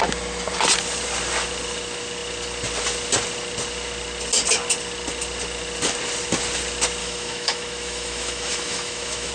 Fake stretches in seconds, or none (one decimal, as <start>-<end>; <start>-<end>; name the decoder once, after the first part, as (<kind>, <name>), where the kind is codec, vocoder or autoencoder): 7.0-9.3 (autoencoder, DAC-VAE)